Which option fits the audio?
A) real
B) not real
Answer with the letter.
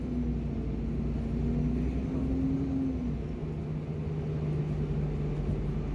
A